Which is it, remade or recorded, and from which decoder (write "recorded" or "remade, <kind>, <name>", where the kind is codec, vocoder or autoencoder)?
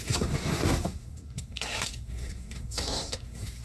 remade, codec, SNAC